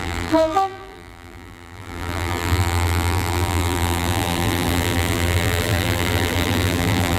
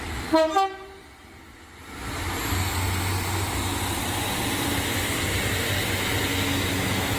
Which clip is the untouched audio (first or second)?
second